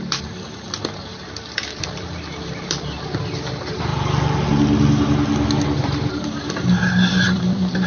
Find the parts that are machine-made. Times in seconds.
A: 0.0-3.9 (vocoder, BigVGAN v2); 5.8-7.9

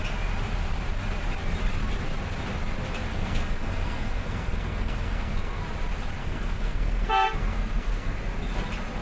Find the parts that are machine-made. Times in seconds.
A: 3.1-5.6 (codec, SNAC); 6.2-8.2

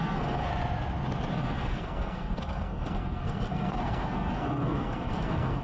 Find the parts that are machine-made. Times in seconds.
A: 0.0-0.5 (codec, SNAC); 1.3-5.6

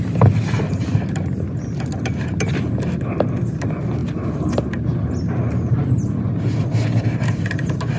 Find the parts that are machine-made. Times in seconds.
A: none

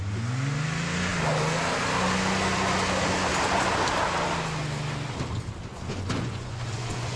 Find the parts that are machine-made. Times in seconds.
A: 5.7-7.2 (vocoder, Vocos)

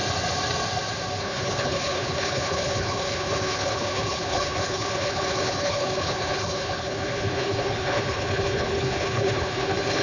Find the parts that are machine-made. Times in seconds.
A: 1.2-10.0 (codec, HILCodec)